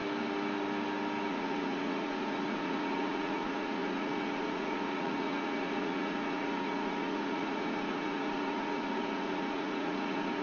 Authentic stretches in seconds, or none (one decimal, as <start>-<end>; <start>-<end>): 0.0-1.3